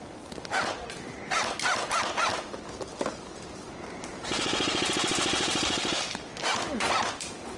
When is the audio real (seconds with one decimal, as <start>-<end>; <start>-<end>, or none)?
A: 0.0-7.6